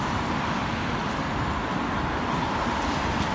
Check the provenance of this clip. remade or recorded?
recorded